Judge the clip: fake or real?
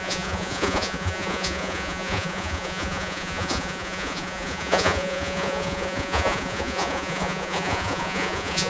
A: fake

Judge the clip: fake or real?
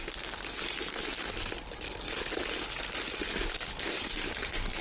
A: real